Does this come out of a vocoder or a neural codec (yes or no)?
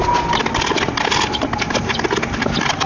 no